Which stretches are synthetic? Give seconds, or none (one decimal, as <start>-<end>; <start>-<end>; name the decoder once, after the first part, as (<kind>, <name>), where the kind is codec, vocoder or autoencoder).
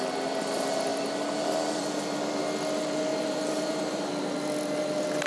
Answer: 3.1-4.1 (vocoder, BigVGAN v2)